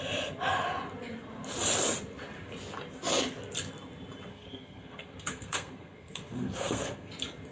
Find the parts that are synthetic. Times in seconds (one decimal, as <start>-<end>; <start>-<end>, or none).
4.3-7.1